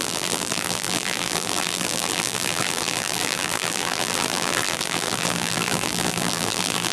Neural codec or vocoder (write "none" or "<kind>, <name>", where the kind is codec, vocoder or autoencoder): vocoder, BigVGAN v2